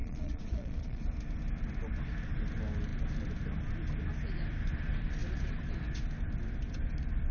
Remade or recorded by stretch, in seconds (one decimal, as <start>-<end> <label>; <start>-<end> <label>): 0.0-1.0 remade; 1.0-7.3 recorded